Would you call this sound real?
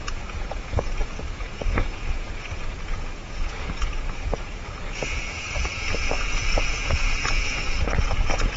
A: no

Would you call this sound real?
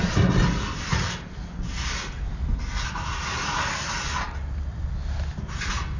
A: yes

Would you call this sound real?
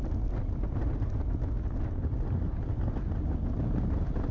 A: yes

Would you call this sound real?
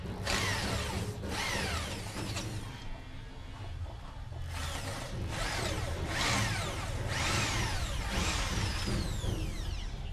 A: yes